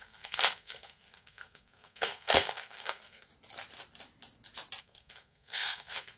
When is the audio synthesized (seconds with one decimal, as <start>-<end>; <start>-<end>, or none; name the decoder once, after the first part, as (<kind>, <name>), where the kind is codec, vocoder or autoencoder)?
0.0-3.3 (codec, SNAC); 4.8-6.2